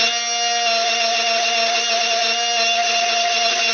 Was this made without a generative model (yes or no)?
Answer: yes